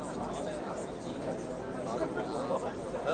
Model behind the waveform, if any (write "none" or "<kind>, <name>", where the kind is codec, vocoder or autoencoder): none